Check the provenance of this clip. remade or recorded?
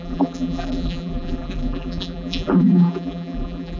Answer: remade